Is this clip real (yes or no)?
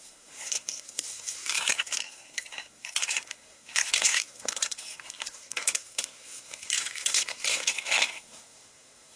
no